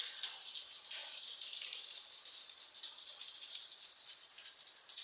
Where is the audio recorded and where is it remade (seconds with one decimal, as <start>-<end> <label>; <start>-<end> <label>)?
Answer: 0.0-1.0 recorded; 1.0-2.4 remade; 2.4-4.1 recorded; 4.1-5.0 remade